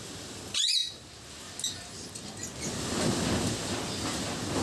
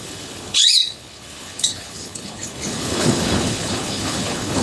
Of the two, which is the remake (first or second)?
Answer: second